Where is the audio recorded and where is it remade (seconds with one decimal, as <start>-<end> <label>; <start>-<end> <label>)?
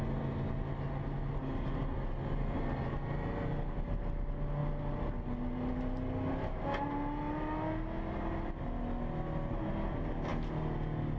0.0-11.2 recorded